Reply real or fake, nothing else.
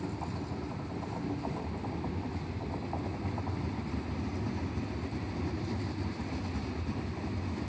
real